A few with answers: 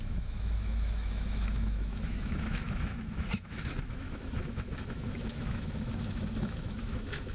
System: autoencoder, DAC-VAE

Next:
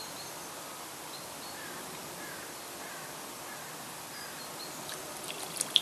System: none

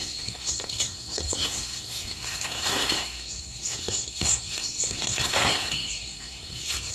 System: codec, SNAC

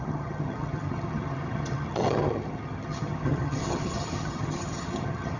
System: vocoder, HiFi-GAN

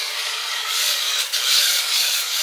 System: codec, DAC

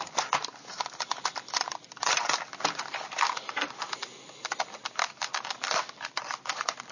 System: vocoder, BigVGAN v2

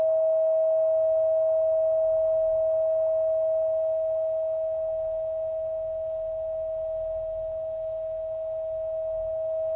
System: none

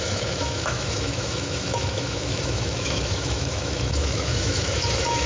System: autoencoder, DAC-VAE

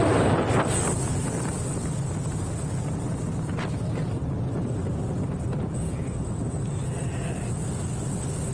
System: none